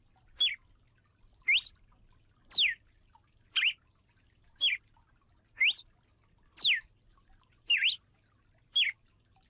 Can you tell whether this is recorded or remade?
recorded